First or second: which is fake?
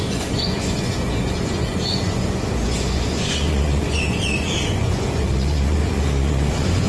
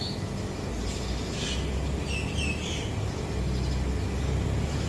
first